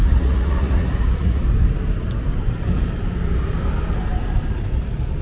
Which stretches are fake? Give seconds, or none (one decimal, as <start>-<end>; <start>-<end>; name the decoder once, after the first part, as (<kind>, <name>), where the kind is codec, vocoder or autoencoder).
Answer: 0.0-1.4 (vocoder, Vocos)